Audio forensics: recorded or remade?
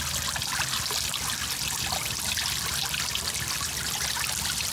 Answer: recorded